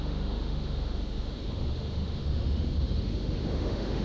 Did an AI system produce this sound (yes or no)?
yes